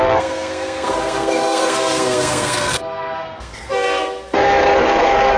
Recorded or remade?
remade